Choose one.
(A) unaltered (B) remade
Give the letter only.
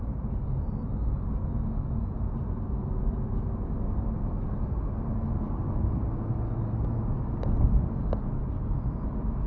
A